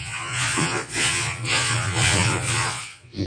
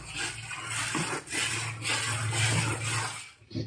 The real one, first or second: second